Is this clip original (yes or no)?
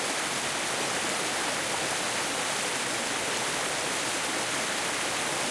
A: yes